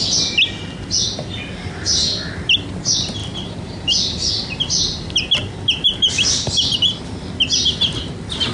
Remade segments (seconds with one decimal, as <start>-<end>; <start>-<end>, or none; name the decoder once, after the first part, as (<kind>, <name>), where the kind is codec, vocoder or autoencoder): 3.2-7.0 (vocoder, BigVGAN v2)